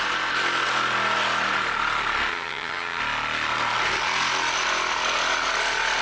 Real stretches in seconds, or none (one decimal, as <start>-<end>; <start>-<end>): 0.0-2.3; 3.0-6.0